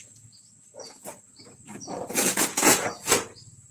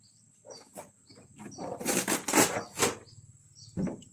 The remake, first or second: first